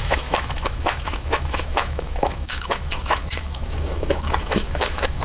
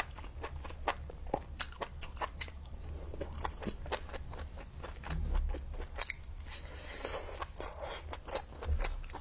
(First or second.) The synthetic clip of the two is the first